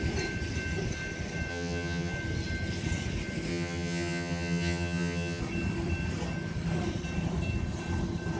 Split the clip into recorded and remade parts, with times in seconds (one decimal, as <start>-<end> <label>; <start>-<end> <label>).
0.0-1.5 recorded; 1.5-2.1 remade; 2.1-3.5 recorded; 3.5-5.4 remade; 5.4-8.4 recorded